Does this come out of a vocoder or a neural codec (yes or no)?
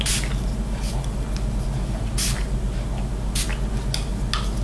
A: no